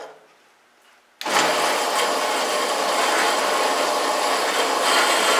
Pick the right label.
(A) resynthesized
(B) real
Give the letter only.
B